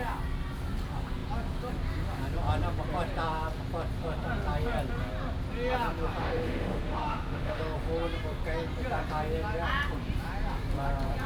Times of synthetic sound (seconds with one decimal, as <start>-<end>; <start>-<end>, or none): 6.2-7.6